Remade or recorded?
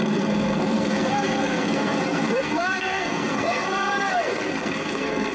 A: remade